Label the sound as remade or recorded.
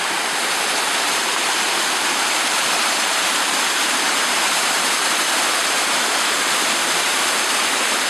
remade